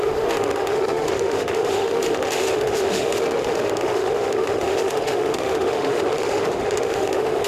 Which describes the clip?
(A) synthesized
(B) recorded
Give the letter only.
A